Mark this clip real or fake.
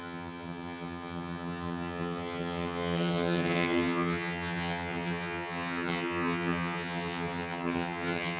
fake